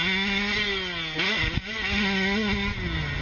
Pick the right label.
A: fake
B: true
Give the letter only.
B